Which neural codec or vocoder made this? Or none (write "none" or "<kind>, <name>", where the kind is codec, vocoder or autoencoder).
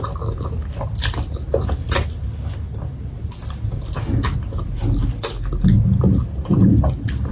none